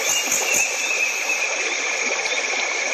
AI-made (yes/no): no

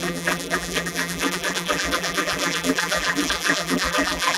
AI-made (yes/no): yes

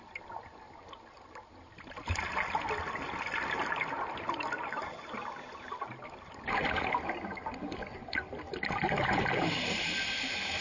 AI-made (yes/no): no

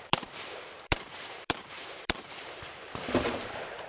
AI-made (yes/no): yes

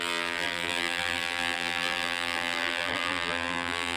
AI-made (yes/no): yes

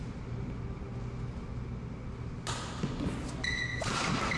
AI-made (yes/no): no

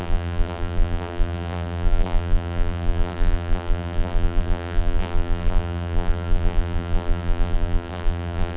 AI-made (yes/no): yes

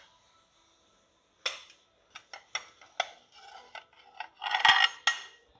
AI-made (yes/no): no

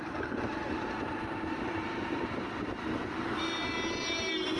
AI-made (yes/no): yes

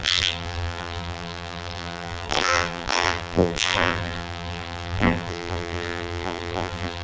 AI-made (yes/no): yes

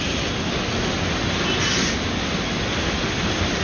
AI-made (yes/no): no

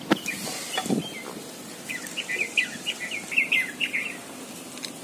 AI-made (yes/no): no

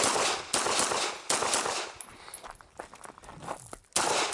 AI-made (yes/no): no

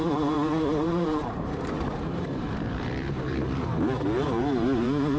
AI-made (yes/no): yes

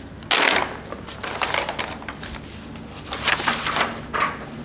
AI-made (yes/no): no